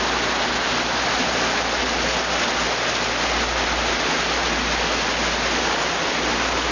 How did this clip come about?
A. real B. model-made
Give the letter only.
A